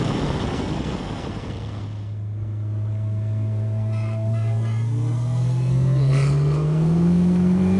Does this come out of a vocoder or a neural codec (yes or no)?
yes